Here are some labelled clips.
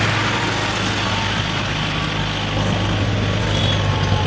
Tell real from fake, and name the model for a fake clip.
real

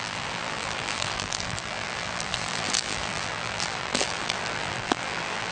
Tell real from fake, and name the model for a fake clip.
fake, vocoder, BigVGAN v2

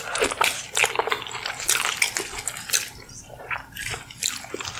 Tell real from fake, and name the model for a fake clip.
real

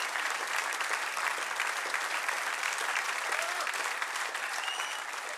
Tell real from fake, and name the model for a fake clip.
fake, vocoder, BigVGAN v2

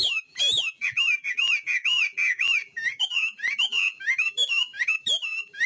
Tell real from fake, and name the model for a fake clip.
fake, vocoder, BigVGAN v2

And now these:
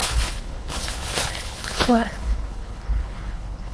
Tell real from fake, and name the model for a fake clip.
fake, codec, HILCodec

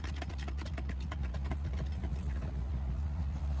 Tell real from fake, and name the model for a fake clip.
fake, vocoder, Vocos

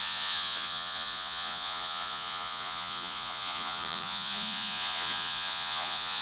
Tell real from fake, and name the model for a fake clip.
fake, vocoder, Vocos